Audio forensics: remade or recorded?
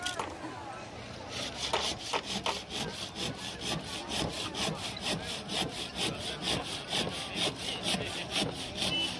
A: recorded